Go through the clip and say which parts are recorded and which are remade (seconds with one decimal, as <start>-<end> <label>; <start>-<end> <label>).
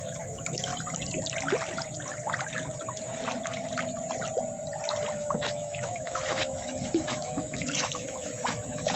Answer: 0.0-0.7 remade; 0.7-5.1 recorded; 5.1-9.0 remade